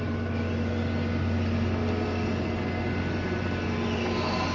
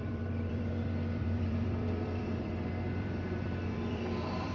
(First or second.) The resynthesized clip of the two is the second